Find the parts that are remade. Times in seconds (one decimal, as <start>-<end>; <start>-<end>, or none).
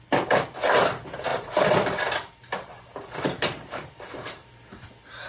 1.3-4.5